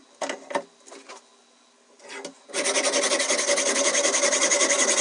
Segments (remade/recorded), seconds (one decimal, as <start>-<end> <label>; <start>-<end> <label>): 0.0-5.0 recorded